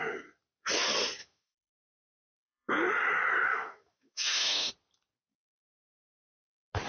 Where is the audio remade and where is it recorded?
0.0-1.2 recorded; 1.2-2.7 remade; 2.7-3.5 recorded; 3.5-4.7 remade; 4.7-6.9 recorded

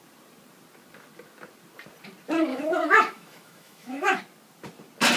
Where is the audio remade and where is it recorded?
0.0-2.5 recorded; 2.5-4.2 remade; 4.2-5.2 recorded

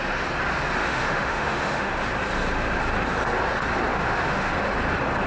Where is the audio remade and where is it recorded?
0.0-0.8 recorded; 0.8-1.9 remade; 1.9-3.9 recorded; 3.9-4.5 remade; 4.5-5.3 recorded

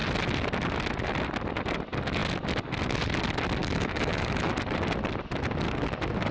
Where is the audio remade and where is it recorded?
0.0-3.6 recorded; 3.6-4.5 remade; 4.5-6.3 recorded

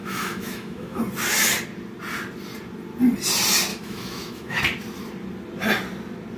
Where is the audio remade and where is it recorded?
0.0-1.0 remade; 1.0-3.7 recorded; 3.7-4.6 remade; 4.6-6.4 recorded